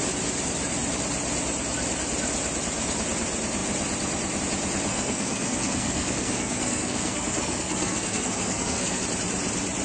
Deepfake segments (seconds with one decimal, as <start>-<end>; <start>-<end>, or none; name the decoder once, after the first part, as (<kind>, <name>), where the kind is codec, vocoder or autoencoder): 4.9-9.0 (codec, SNAC)